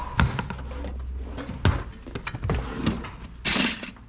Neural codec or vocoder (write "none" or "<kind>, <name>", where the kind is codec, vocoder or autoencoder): none